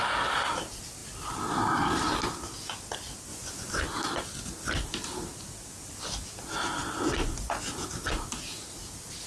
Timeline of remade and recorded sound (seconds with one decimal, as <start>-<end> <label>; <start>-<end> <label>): 0.0-3.3 recorded; 3.3-3.8 remade; 3.8-9.3 recorded